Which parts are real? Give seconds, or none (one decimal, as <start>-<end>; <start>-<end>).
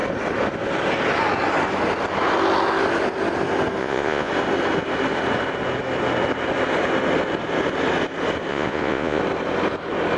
0.0-3.8; 4.3-8.5; 9.2-10.2